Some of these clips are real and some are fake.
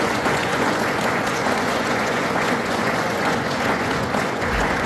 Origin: fake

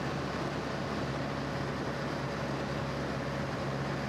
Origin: real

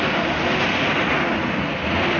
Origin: real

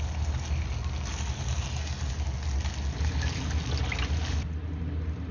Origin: real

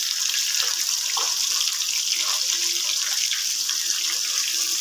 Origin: real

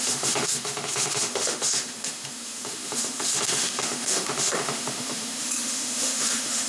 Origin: fake